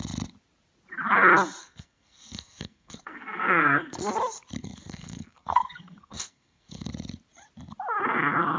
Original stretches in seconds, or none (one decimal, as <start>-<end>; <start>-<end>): 0.0-1.6; 4.0-4.6; 6.9-8.6